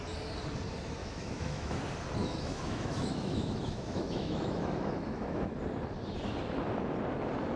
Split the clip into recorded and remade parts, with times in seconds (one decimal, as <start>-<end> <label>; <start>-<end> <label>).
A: 0.0-1.0 recorded; 1.0-1.8 remade; 1.8-2.2 recorded; 2.2-5.5 remade; 5.5-7.6 recorded